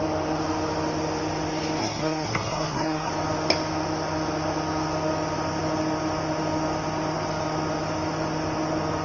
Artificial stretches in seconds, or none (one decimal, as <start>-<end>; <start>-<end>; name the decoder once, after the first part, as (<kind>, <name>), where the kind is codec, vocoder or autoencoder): 1.8-3.1 (codec, SNAC)